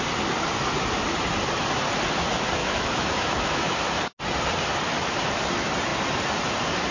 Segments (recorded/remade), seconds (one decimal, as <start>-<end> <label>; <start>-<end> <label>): 0.0-2.6 recorded; 2.6-4.0 remade; 4.0-6.9 recorded